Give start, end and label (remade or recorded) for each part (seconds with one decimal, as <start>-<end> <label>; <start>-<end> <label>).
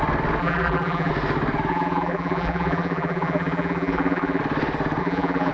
0.0-0.4 recorded; 0.4-1.1 remade; 1.1-1.7 recorded; 1.7-4.4 remade; 4.4-5.0 recorded; 5.0-5.5 remade